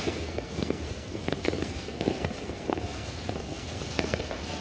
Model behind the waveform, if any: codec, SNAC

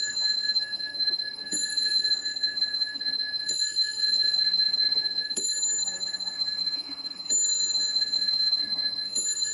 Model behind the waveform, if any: codec, SNAC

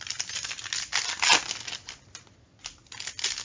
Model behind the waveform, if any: none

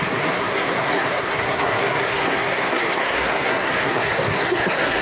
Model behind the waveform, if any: codec, SNAC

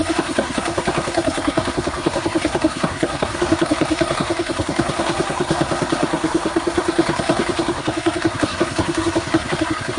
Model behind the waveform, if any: codec, SNAC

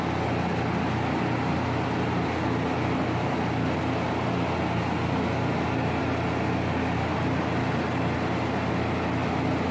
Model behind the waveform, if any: none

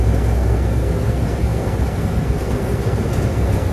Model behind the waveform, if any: codec, SNAC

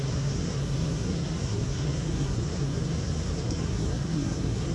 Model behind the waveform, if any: codec, SNAC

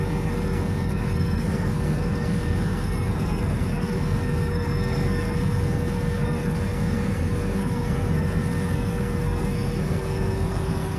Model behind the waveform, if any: codec, SNAC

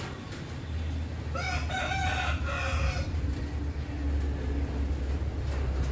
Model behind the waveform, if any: none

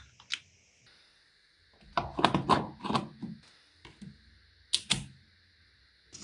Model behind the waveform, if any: none